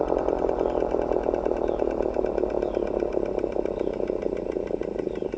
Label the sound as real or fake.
real